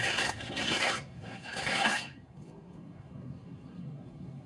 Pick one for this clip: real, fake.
fake